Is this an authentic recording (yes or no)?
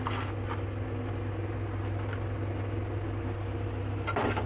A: yes